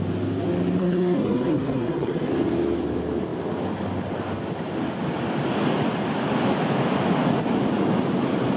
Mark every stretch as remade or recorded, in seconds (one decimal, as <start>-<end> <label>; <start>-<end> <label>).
0.0-0.8 recorded; 0.8-2.3 remade; 2.3-8.6 recorded